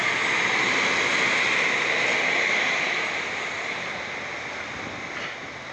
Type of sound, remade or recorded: recorded